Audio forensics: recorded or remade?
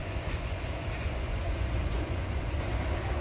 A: remade